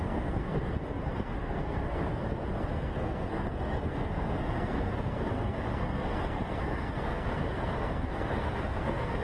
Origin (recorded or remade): remade